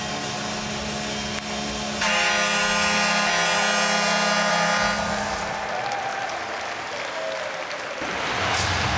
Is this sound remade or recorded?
recorded